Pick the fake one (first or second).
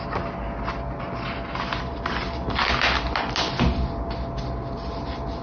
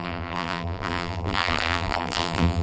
second